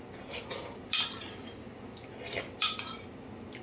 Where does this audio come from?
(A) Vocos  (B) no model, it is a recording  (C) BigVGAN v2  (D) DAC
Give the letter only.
B